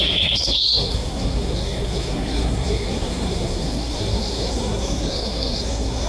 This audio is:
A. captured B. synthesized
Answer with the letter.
B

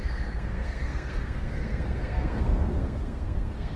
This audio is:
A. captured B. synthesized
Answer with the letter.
B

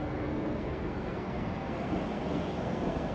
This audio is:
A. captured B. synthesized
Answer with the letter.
B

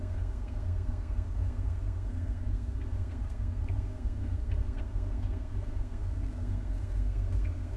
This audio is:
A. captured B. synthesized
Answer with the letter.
B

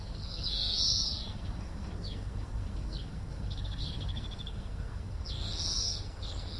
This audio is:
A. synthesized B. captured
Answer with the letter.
A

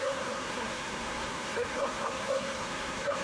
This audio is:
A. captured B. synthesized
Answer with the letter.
B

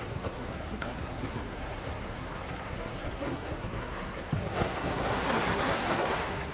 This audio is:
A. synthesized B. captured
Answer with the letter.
A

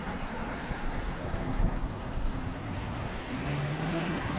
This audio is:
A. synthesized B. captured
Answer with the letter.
A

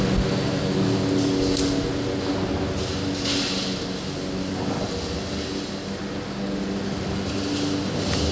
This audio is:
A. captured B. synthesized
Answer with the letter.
A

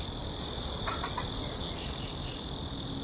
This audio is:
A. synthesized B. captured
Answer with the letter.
B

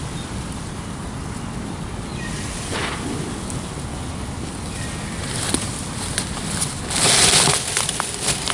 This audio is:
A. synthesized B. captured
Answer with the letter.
B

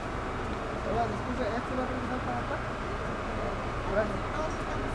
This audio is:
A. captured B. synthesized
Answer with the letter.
A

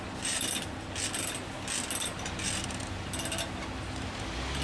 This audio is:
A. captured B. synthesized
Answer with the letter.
A